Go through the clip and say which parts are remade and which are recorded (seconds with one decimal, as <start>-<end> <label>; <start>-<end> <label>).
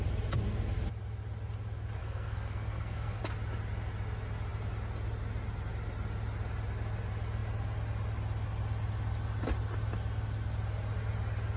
0.0-2.0 recorded; 2.0-3.2 remade; 3.2-11.6 recorded